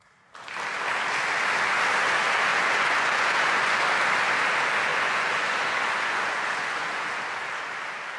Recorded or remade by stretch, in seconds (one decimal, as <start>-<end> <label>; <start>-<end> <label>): 0.0-2.5 recorded; 2.5-3.8 remade; 3.8-4.9 recorded; 4.9-7.1 remade; 7.1-8.2 recorded